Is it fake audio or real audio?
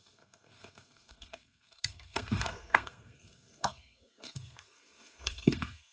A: fake